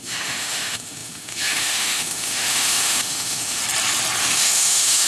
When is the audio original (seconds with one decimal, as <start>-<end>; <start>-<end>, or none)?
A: 3.6-4.2